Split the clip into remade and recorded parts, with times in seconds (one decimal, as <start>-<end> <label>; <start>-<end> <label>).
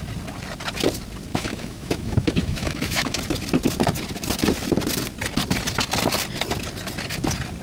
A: 0.0-1.3 recorded; 1.3-3.2 remade; 3.2-7.6 recorded